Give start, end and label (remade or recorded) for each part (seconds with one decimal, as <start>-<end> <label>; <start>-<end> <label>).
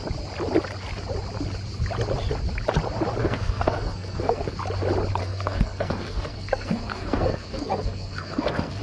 0.0-3.2 recorded; 3.2-4.5 remade; 4.5-5.2 recorded; 5.2-8.8 remade